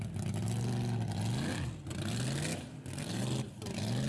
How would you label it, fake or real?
real